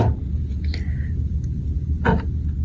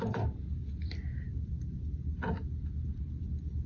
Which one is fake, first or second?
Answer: second